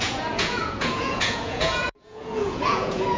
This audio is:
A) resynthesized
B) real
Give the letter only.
A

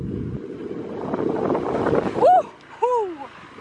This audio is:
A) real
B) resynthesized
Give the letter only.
A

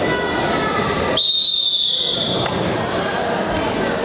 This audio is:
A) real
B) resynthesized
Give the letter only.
A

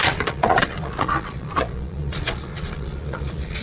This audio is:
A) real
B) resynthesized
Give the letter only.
B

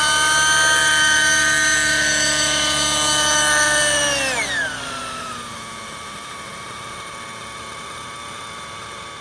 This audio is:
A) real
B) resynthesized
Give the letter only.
A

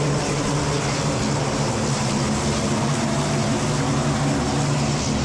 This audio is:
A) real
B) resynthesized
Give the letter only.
A